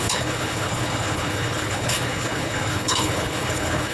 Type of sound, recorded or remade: remade